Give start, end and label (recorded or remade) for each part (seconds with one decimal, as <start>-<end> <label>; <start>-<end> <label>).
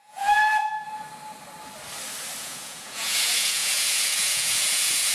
0.0-0.4 remade; 0.4-2.4 recorded; 2.4-5.1 remade